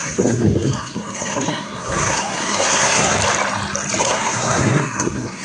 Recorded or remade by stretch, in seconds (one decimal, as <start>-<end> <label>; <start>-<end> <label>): 0.0-3.2 remade; 3.2-4.0 recorded; 4.0-5.4 remade